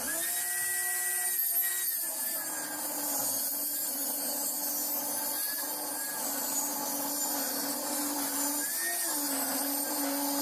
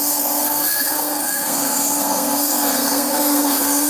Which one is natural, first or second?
first